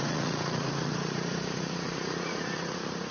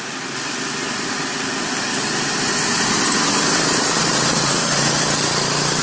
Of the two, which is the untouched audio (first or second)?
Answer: second